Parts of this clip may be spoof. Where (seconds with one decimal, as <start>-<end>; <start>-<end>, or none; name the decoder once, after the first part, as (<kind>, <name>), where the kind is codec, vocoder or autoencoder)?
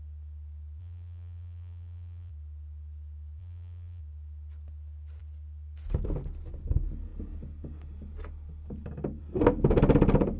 0.8-2.3 (vocoder, BigVGAN v2); 3.4-4.0